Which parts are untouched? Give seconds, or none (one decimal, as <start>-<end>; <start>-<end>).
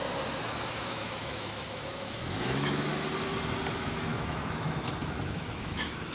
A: 0.0-0.8; 2.9-3.7